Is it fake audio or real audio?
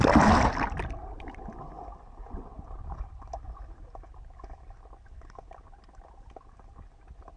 real